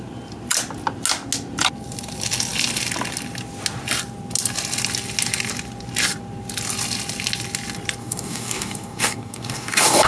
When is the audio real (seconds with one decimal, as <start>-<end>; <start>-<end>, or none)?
0.0-8.0